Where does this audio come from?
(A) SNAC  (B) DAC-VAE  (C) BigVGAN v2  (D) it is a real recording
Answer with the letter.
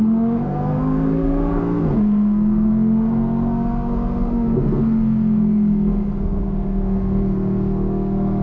A